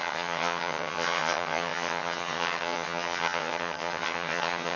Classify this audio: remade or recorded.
remade